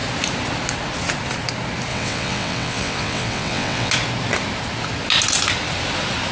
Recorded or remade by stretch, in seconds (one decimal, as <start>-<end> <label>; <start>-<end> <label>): 0.0-1.9 recorded; 1.9-3.9 remade; 3.9-6.3 recorded